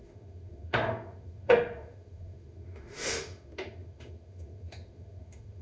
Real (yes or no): no